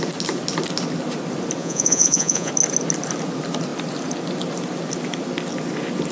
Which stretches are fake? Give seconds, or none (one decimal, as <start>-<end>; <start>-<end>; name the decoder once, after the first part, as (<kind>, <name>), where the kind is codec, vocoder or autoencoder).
1.6-2.5 (vocoder, Vocos)